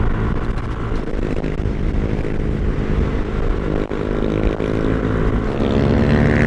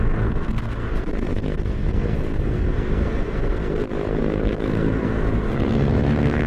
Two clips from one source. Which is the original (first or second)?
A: first